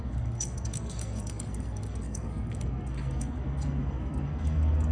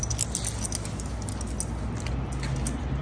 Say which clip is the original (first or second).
second